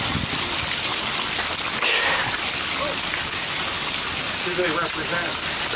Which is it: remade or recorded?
recorded